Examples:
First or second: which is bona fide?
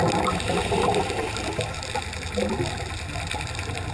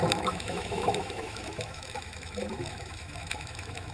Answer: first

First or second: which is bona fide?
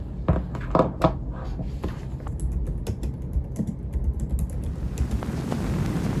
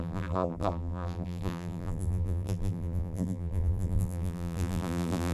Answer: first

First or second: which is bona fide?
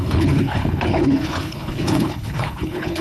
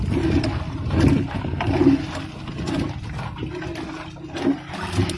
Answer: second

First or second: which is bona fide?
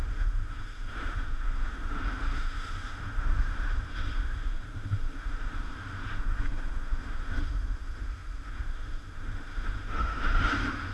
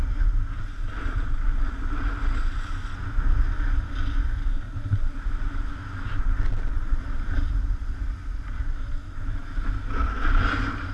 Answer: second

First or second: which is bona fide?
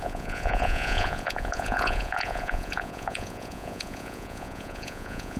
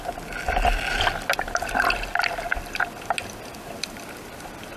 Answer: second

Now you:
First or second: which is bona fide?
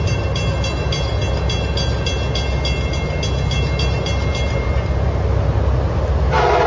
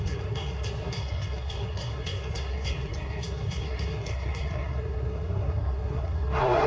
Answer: first